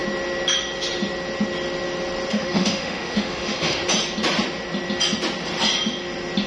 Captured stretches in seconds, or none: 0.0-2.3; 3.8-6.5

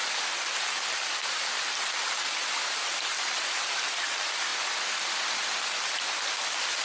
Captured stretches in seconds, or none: 0.0-6.8

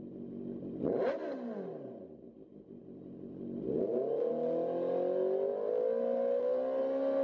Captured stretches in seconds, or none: 0.0-7.2